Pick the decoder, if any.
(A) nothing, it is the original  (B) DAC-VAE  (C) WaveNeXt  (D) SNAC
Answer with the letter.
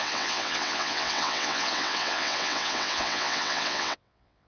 C